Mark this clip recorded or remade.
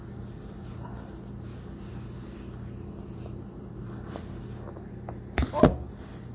recorded